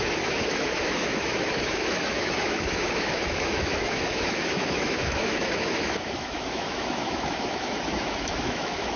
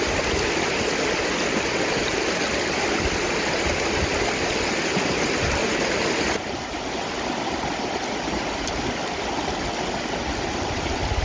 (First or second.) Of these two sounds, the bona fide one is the second